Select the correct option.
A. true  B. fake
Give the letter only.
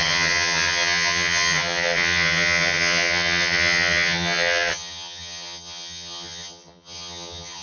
B